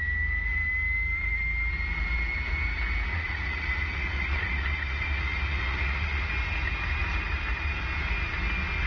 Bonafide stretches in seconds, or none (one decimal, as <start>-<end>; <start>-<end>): 0.0-3.1; 6.3-8.9